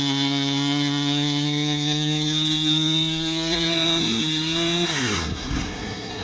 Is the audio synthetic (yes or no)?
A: yes